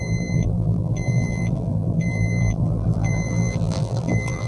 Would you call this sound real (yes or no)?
no